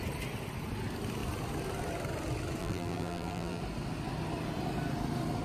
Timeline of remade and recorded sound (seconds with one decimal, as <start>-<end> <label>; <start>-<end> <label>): 0.0-2.6 recorded; 2.6-3.6 remade; 3.6-5.4 recorded